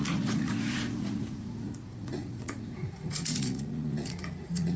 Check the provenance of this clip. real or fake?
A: fake